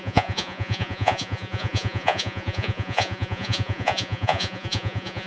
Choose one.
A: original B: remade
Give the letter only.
B